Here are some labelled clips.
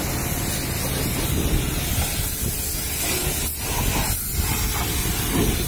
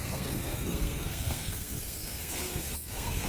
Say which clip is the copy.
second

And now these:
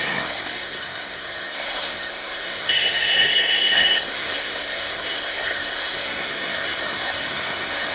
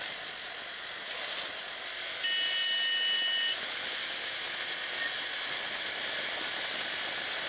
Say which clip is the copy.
first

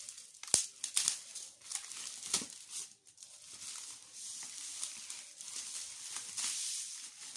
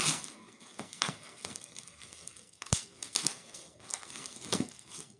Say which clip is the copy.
second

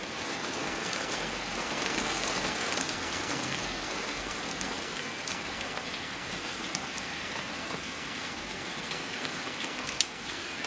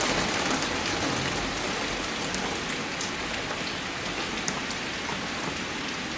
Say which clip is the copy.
first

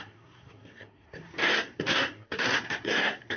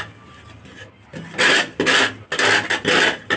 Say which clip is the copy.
first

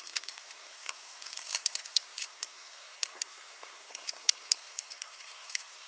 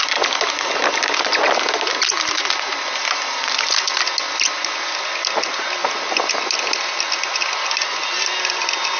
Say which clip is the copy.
first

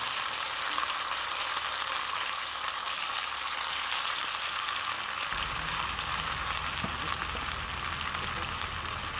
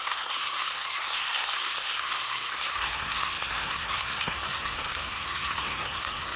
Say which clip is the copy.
second